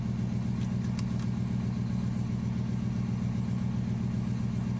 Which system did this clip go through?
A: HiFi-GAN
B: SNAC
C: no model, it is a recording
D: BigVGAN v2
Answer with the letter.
C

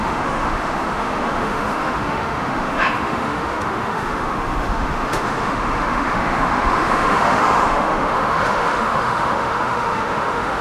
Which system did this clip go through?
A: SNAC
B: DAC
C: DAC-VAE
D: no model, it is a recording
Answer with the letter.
C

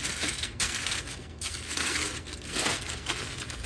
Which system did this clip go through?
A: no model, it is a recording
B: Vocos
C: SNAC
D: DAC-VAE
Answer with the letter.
C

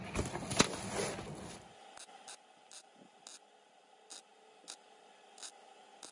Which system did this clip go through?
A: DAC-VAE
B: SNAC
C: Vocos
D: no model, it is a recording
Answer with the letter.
D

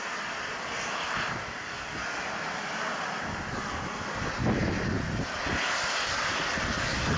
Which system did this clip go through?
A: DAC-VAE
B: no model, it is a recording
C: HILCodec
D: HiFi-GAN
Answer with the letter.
B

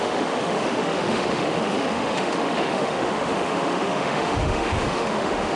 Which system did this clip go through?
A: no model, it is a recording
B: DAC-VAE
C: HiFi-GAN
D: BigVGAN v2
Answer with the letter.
B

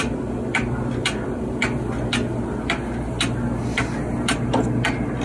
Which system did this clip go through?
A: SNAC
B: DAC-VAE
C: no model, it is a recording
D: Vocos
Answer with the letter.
C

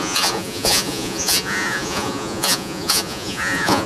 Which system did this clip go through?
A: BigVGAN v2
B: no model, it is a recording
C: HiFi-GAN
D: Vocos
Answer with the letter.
D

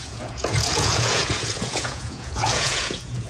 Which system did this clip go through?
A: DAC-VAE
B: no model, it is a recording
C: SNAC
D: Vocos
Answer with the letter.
D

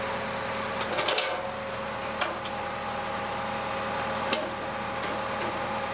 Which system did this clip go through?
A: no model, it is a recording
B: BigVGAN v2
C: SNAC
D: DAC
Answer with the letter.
A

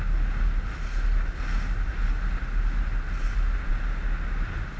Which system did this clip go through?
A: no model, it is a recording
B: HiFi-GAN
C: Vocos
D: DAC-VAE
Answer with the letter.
A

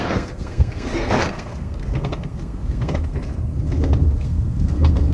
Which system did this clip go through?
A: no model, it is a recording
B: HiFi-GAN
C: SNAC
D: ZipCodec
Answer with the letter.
C